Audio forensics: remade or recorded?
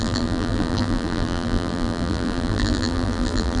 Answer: remade